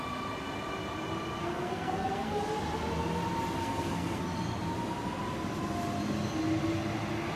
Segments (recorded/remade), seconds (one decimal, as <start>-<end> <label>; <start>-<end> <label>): 0.0-1.4 recorded; 1.4-2.4 remade; 2.4-3.6 recorded; 3.6-4.2 remade; 4.2-7.4 recorded